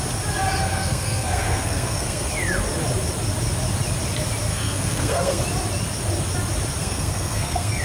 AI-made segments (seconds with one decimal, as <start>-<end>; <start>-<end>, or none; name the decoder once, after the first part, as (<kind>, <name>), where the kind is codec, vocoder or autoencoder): 0.6-2.3 (codec, SNAC); 4.5-5.4; 6.8-7.8

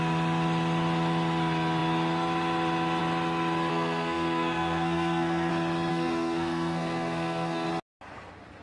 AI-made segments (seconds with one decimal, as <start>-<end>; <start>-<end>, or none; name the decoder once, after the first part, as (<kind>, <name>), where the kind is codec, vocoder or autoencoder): 3.7-5.5 (codec, SNAC); 5.9-7.7